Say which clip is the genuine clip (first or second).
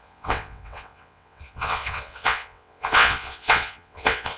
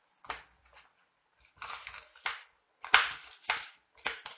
second